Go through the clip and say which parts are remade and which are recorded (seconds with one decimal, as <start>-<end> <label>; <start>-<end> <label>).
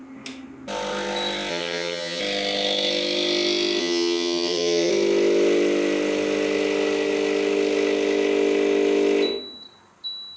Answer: 0.0-1.5 recorded; 1.5-2.2 remade; 2.2-3.8 recorded; 3.8-4.9 remade; 4.9-10.4 recorded